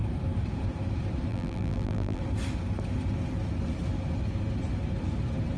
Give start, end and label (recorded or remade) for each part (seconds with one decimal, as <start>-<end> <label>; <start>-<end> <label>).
0.0-1.3 recorded; 1.3-2.2 remade; 2.2-5.6 recorded